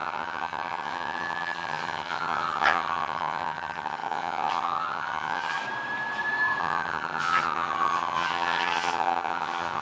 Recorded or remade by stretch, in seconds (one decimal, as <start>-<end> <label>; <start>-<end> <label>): 0.0-5.6 remade; 5.6-6.6 recorded; 6.6-9.8 remade